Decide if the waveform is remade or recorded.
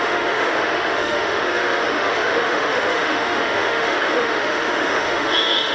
remade